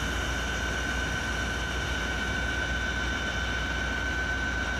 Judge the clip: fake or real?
real